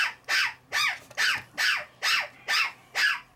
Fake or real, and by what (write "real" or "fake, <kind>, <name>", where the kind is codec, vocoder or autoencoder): real